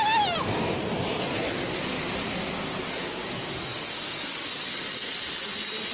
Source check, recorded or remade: recorded